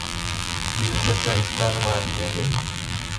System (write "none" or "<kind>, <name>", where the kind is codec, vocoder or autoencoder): vocoder, BigVGAN v2